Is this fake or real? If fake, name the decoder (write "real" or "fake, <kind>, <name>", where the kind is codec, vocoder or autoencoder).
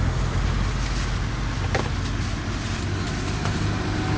real